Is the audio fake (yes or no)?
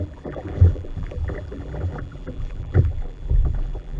yes